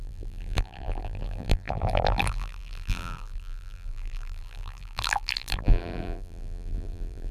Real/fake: fake